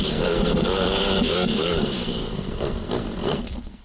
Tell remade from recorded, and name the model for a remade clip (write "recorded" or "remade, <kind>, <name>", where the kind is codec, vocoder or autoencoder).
remade, codec, SNAC